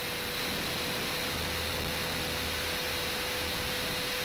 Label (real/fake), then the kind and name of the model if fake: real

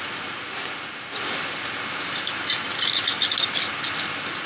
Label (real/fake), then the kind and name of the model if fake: real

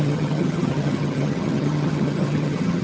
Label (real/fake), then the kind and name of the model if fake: fake, vocoder, HiFi-GAN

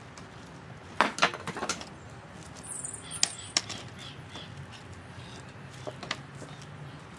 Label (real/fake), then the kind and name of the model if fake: real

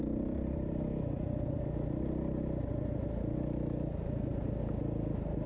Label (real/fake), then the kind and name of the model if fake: real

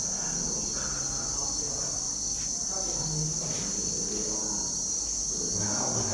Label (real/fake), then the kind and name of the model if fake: real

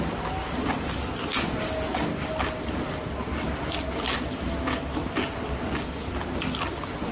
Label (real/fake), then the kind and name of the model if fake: real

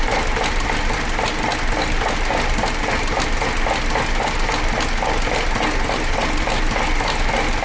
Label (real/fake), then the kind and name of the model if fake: real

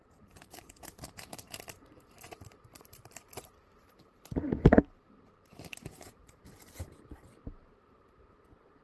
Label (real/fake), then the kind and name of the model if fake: fake, vocoder, BigVGAN v2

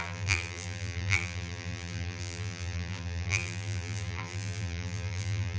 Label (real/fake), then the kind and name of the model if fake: fake, vocoder, BigVGAN v2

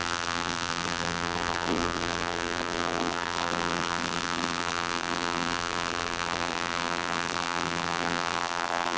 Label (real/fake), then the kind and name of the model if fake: fake, vocoder, BigVGAN v2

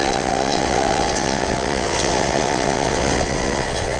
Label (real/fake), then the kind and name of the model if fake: fake, vocoder, WaveNeXt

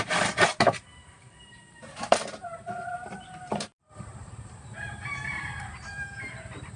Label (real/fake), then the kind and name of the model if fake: fake, vocoder, BigVGAN v2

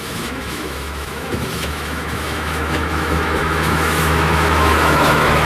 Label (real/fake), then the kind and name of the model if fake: fake, autoencoder, DAC-VAE